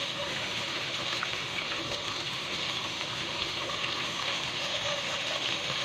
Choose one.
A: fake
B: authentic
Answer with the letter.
A